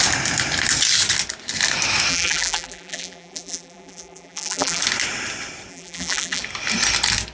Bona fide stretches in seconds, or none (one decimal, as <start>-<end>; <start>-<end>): 0.0-2.1; 4.8-5.7; 6.4-7.3